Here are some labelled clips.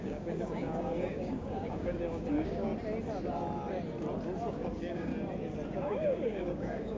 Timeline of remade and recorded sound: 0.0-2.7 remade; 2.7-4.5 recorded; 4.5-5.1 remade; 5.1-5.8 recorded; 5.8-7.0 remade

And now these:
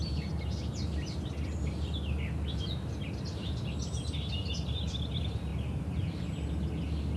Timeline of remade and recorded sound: 0.0-7.2 recorded

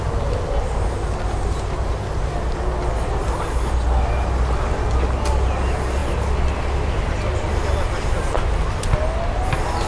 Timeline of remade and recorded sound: 0.0-9.9 recorded

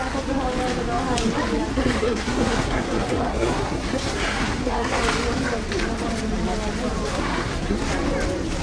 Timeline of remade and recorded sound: 0.0-1.7 recorded; 1.7-5.0 remade; 5.0-7.1 recorded; 7.1-7.8 remade; 7.8-8.6 recorded